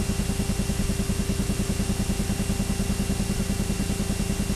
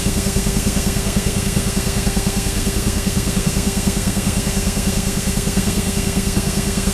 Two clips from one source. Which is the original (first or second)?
first